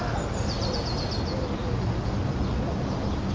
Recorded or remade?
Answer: recorded